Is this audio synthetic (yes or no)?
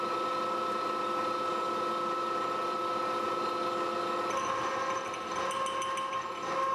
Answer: no